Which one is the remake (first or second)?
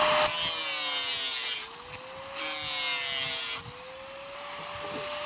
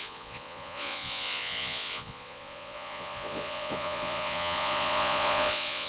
second